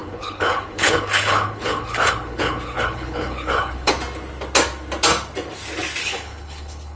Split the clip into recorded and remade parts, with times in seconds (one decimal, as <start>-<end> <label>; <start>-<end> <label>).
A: 0.0-3.9 remade; 3.9-6.0 recorded; 6.0-7.0 remade

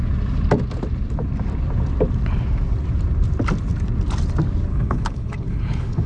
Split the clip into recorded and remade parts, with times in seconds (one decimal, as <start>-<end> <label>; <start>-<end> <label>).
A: 0.0-4.7 recorded; 4.7-6.1 remade

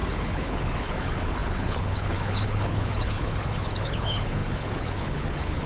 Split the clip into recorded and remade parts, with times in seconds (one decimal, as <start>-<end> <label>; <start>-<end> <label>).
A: 0.0-5.7 remade

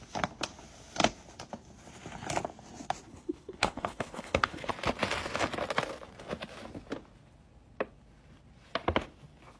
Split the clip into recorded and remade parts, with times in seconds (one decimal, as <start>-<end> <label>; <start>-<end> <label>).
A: 0.0-3.1 recorded; 3.1-4.7 remade; 4.7-9.6 recorded

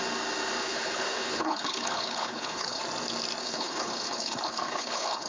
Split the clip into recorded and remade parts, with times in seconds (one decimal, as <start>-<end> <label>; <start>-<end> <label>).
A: 0.0-0.6 recorded; 0.6-2.8 remade; 2.8-3.4 recorded; 3.4-5.3 remade

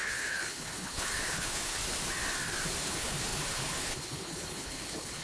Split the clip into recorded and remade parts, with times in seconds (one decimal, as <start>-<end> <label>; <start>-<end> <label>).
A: 0.0-1.8 remade; 1.8-2.8 recorded; 2.8-5.2 remade

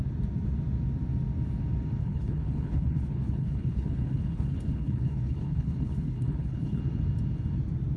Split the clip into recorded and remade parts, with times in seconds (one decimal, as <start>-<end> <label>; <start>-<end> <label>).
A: 0.0-2.0 recorded; 2.0-6.8 remade; 6.8-8.0 recorded